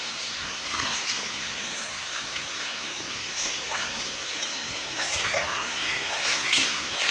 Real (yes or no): no